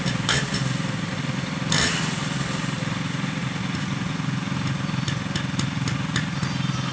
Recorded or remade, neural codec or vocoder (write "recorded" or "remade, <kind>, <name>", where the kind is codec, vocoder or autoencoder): recorded